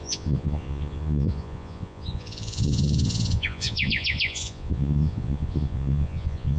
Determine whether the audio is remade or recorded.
remade